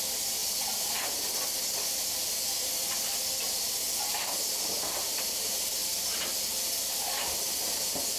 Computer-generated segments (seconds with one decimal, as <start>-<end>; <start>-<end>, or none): 0.4-5.3